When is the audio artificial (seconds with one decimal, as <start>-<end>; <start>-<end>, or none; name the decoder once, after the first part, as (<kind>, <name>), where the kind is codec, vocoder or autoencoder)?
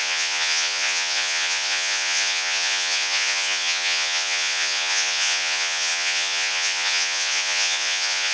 0.0-8.3 (vocoder, Vocos)